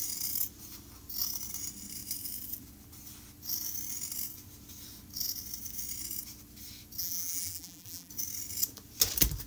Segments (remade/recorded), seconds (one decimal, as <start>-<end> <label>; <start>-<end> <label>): 0.0-7.0 recorded; 7.0-8.1 remade; 8.1-9.5 recorded